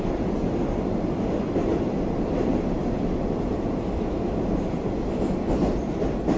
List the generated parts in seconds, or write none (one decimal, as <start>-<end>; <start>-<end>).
none